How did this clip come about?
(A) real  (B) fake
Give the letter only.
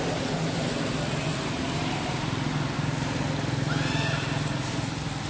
A